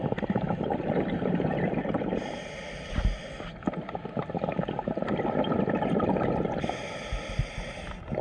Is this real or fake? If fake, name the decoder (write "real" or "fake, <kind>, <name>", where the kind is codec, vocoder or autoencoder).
real